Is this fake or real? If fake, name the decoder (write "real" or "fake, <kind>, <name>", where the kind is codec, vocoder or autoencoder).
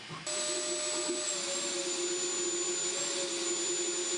real